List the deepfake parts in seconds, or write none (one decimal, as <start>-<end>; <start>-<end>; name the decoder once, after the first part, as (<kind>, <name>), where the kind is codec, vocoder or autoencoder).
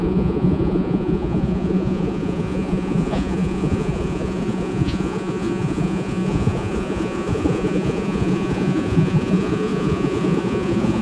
0.0-11.0 (vocoder, Vocos)